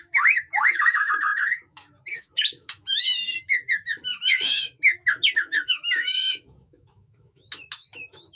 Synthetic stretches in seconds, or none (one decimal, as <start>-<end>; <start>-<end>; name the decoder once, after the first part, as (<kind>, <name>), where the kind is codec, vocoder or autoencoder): 0.0-8.4 (autoencoder, DAC-VAE)